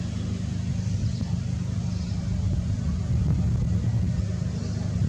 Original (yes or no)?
yes